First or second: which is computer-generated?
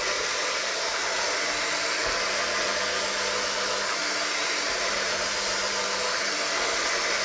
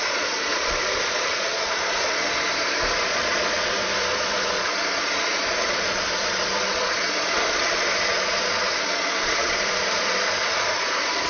second